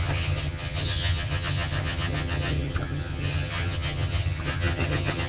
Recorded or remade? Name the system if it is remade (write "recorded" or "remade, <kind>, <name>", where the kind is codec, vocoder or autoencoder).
remade, vocoder, HiFi-GAN